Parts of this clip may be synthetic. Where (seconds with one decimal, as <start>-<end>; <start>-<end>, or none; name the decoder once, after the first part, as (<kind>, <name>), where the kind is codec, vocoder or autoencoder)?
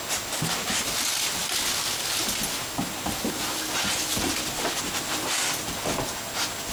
none